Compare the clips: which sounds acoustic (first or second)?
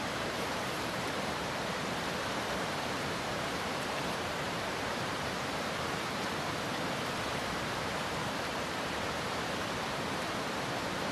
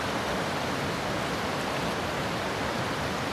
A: second